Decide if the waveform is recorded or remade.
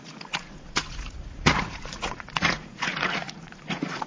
remade